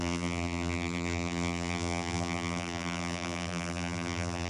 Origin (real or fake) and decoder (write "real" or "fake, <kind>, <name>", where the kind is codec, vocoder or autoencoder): fake, vocoder, BigVGAN v2